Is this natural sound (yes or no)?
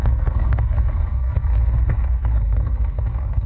no